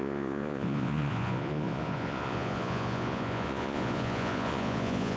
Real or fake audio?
fake